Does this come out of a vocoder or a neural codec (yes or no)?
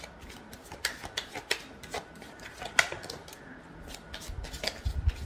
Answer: no